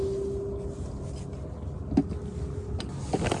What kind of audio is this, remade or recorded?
recorded